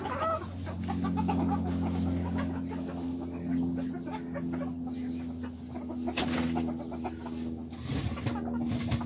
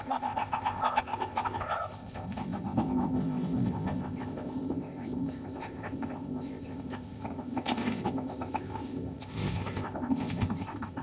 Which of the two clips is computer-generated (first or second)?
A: second